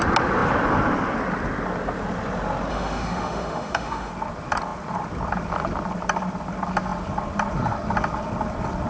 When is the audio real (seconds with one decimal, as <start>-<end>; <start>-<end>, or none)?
0.0-2.7; 4.1-8.9